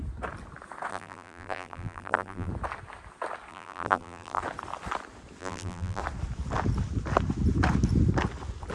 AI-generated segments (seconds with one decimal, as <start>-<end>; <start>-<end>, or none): 0.9-2.5; 3.5-4.4; 5.4-6.0